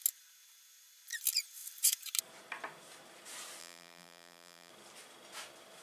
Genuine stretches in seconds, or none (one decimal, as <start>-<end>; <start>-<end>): 0.0-3.6; 4.7-5.8